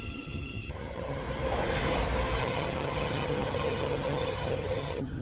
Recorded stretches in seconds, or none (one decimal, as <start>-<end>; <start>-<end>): 1.2-2.4